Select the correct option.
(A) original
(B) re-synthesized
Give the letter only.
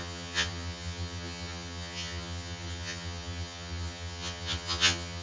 B